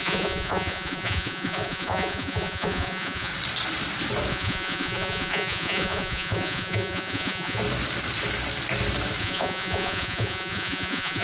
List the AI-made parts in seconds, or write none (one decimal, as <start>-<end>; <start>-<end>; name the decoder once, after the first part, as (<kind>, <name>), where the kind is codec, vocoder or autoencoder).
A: 0.0-3.3 (vocoder, Vocos); 4.3-7.6; 9.2-11.2